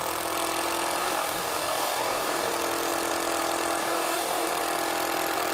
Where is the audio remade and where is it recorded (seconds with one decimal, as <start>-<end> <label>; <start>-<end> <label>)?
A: 0.0-1.0 recorded; 1.0-2.5 remade; 2.5-3.8 recorded; 3.8-4.5 remade; 4.5-5.5 recorded